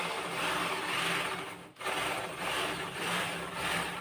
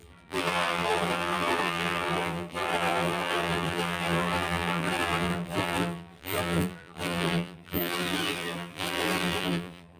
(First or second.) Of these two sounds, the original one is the first